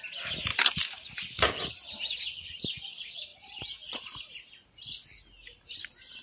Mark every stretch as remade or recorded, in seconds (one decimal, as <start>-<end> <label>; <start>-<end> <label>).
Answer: 0.0-3.3 recorded; 3.3-4.1 remade; 4.1-6.2 recorded